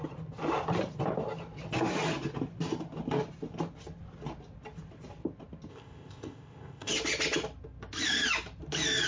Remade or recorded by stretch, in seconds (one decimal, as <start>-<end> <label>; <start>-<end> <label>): 0.0-5.7 recorded; 5.7-6.9 remade; 6.9-9.1 recorded